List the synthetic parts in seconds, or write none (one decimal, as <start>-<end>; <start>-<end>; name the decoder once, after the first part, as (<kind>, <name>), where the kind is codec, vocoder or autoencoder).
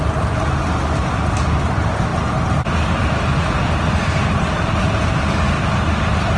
none